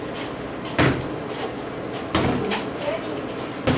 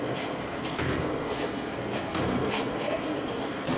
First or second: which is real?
first